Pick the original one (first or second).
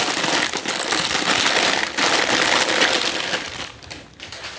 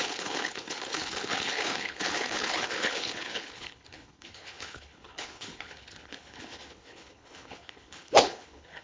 first